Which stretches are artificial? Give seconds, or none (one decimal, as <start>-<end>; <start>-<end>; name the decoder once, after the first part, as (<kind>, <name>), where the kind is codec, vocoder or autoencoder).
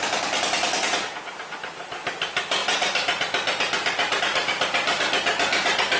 none